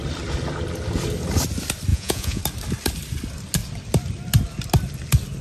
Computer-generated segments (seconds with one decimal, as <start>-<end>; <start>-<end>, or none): 1.9-2.4